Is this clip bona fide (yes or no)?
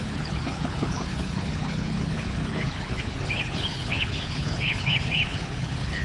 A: no